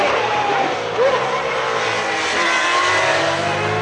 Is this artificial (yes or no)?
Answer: no